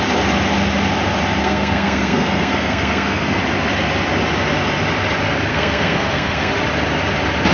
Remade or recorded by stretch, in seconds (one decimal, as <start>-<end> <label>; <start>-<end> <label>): 0.0-1.4 recorded; 1.4-3.4 remade; 3.4-5.5 recorded; 5.5-6.5 remade; 6.5-7.5 recorded